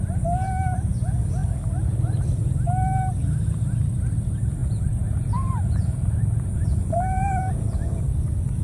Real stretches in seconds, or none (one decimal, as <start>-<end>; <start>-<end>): 0.0-4.6; 8.0-8.6